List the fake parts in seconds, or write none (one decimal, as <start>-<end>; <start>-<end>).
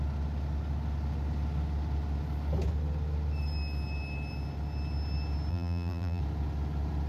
5.5-6.2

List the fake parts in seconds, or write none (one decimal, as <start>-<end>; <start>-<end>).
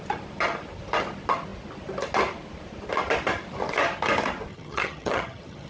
4.5-5.7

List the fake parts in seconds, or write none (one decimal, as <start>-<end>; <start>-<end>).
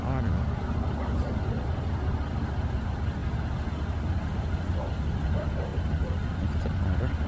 0.0-3.2; 4.4-5.7; 6.6-7.3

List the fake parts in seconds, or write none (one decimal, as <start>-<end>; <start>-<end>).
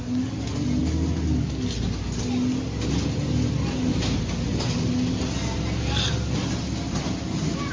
none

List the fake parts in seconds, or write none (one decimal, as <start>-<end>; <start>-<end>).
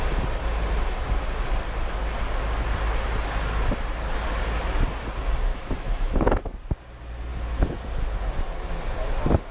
5.5-6.4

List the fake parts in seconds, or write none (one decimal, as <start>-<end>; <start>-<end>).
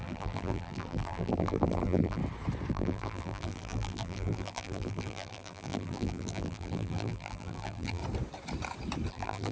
0.0-2.2; 2.7-8.0; 9.1-9.5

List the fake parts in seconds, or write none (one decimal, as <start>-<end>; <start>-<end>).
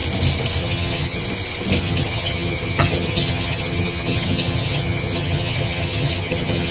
0.6-1.2; 1.8-6.7